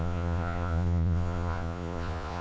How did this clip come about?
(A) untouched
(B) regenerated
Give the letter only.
B